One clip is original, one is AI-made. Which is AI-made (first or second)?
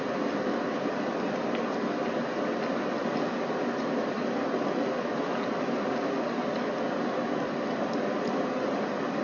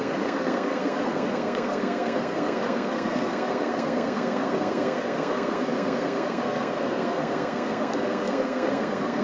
second